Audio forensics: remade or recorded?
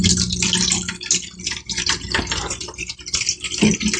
recorded